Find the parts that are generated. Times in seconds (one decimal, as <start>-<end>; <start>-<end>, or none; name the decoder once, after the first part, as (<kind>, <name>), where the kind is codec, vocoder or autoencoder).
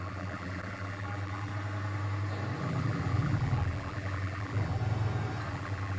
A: 0.0-1.5 (vocoder, BigVGAN v2); 2.6-4.8; 5.5-6.0